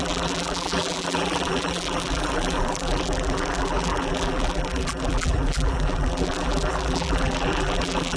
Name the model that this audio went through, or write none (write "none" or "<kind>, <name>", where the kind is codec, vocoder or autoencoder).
vocoder, BigVGAN v2